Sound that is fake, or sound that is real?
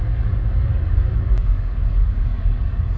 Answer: fake